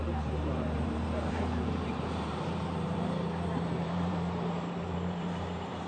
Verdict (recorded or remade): remade